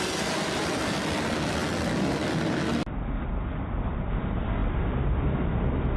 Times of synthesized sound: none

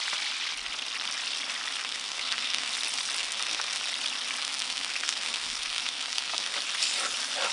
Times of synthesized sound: 1.8-2.7; 3.2-3.8; 4.4-6.5